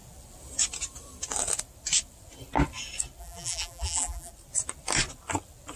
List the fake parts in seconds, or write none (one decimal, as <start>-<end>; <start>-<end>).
3.2-4.3